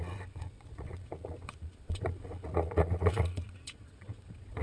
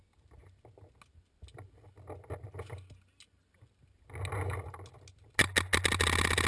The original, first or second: second